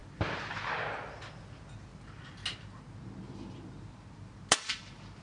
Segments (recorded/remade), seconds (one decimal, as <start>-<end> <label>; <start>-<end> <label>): 0.0-5.2 recorded